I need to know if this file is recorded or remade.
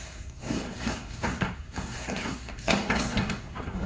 remade